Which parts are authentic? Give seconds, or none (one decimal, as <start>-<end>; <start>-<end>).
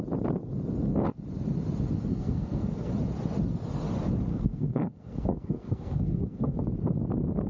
0.0-2.1; 2.9-4.3; 6.6-7.5